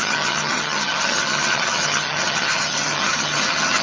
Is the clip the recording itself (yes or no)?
no